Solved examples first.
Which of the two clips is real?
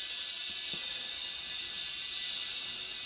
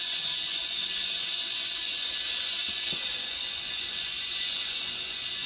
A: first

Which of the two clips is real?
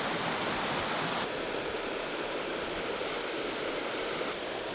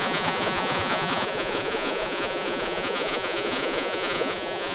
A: first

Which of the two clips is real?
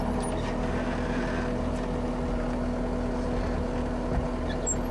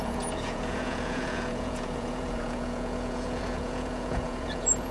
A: first